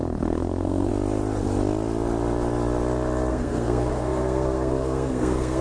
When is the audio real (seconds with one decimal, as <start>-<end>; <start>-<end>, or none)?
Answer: 0.9-3.3